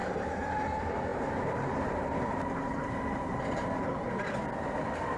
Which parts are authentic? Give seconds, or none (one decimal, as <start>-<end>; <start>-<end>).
0.6-1.1; 4.2-5.2